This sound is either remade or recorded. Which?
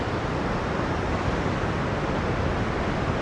recorded